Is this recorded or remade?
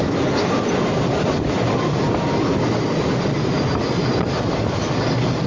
recorded